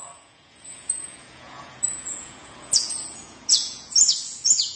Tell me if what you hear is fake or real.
fake